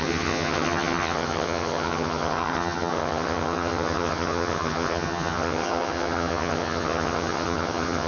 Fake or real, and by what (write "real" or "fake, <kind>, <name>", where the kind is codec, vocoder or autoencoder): fake, vocoder, HiFi-GAN